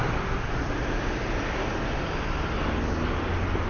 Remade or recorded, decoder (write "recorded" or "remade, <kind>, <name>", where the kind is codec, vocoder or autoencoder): recorded